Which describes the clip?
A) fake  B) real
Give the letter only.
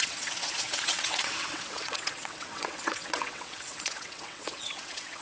A